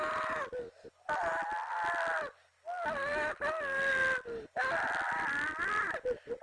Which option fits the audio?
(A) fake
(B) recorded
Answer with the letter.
B